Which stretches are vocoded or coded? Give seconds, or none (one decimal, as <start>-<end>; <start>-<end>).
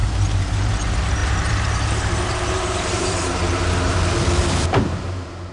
0.0-0.7; 1.2-3.4; 4.4-5.5